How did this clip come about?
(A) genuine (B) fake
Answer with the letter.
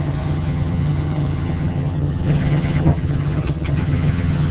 B